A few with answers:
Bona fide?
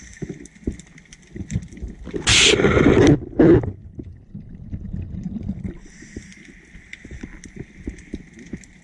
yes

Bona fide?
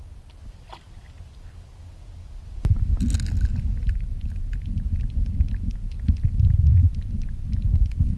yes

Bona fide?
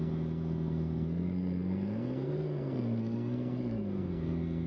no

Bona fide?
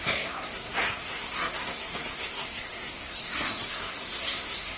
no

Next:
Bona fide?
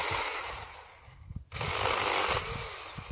yes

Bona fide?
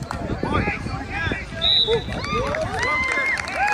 yes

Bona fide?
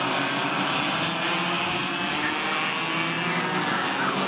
yes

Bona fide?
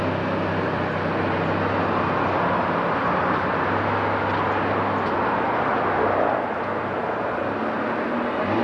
yes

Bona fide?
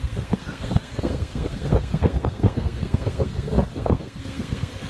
no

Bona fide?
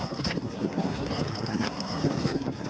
no